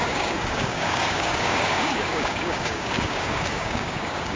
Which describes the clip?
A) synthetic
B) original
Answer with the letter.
A